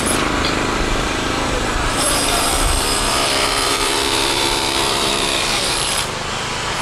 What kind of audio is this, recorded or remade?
remade